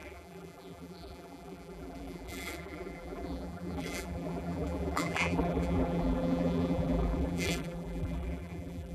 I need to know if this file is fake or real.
fake